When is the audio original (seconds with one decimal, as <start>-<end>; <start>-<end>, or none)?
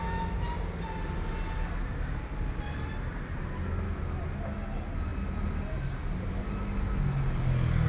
0.0-7.9